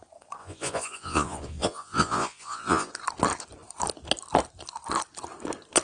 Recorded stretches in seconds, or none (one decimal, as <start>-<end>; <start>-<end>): 0.0-0.4; 2.9-5.8